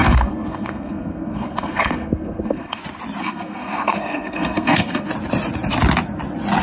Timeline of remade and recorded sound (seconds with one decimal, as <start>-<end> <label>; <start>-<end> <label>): 0.0-2.8 remade; 2.8-3.2 recorded; 3.2-5.1 remade; 5.1-6.6 recorded